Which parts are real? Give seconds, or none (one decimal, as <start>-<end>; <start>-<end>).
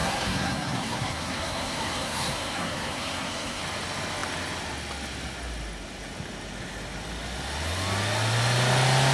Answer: 3.6-9.1